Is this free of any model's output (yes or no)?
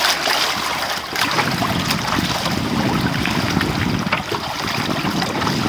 yes